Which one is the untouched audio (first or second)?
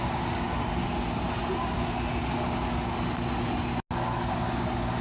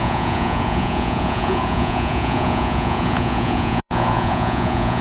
first